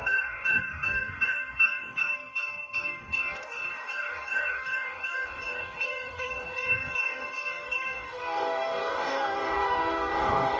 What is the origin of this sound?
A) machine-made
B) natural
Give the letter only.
A